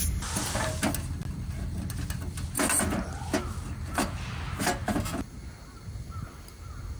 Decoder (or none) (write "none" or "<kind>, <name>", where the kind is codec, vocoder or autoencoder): none